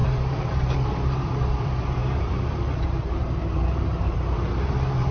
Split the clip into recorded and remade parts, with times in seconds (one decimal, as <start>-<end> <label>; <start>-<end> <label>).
0.0-5.1 remade